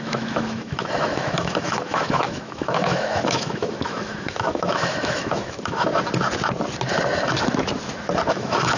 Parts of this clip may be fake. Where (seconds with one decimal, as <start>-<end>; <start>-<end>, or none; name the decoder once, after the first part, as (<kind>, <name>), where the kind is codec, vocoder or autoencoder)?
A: 0.0-5.9 (autoencoder, DAC-VAE); 8.3-8.8